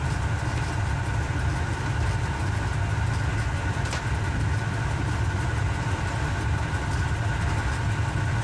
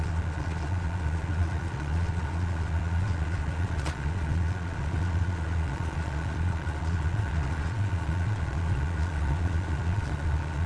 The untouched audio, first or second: first